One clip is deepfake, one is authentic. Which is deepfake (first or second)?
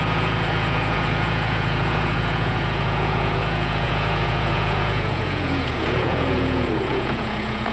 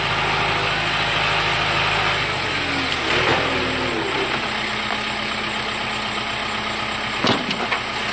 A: first